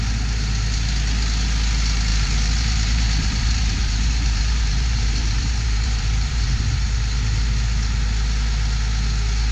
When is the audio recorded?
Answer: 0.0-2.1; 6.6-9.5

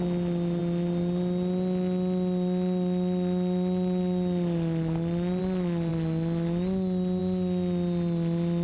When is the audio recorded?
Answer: 0.0-8.6

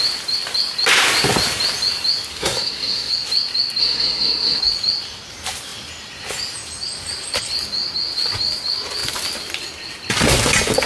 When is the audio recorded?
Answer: 0.0-2.3; 3.1-3.8; 4.6-10.9

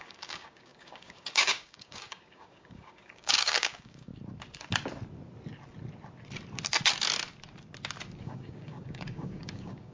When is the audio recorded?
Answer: 4.1-8.2

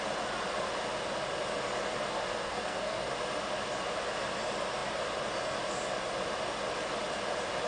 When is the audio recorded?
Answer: 0.0-2.2; 3.1-7.7

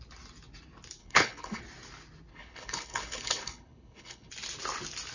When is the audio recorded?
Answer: 0.0-1.0; 1.6-2.3; 4.3-5.1